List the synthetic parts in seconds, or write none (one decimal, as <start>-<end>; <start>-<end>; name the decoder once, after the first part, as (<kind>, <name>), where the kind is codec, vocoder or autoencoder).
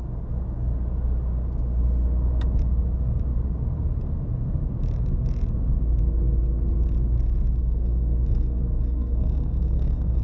7.6-10.2 (codec, SNAC)